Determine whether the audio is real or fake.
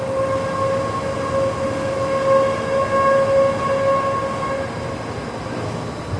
real